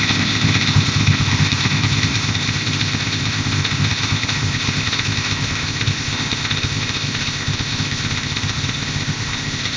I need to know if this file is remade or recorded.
remade